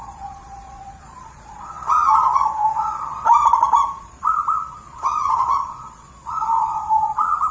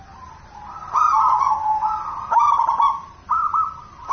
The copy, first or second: first